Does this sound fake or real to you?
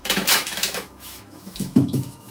fake